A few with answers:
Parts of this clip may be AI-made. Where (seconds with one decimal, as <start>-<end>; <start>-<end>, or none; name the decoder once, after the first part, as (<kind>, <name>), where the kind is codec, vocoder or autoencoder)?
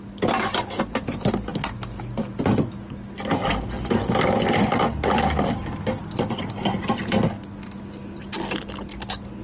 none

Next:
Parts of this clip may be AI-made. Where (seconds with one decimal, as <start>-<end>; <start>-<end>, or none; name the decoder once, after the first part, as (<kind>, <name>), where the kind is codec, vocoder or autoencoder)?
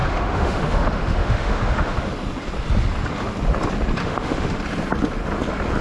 0.0-2.0 (autoencoder, DAC-VAE); 4.0-4.6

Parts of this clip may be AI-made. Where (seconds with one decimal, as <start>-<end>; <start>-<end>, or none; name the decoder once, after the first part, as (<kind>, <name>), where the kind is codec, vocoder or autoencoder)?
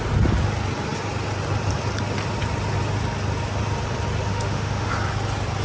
4.3-4.9 (autoencoder, DAC-VAE)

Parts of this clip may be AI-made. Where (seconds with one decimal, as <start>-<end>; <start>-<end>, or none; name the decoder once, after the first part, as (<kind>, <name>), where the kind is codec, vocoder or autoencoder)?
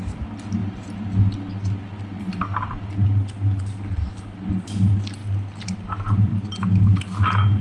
none